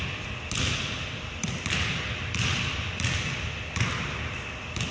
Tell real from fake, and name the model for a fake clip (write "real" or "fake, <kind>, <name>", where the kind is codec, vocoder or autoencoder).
real